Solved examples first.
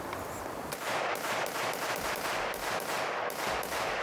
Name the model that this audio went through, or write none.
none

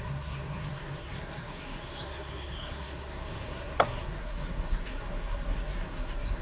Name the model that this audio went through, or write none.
codec, SNAC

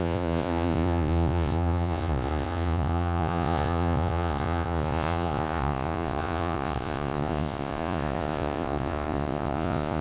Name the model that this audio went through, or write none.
vocoder, Vocos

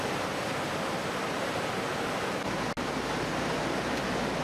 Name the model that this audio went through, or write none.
none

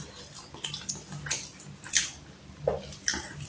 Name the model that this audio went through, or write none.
none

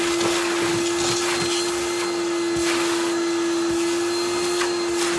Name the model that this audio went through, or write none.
none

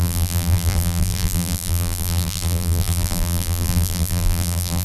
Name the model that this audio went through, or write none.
vocoder, BigVGAN v2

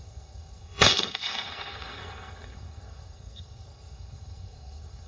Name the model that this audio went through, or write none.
codec, SNAC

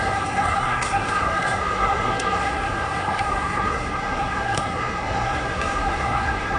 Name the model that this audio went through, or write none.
codec, SNAC